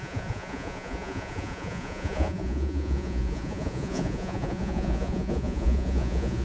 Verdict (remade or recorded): remade